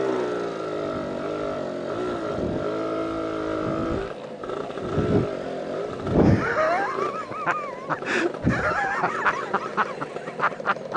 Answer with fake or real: real